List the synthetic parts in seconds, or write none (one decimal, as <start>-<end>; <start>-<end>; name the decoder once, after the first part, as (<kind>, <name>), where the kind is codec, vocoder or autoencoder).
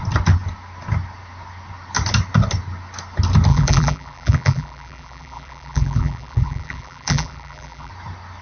3.5-7.9 (vocoder, BigVGAN v2)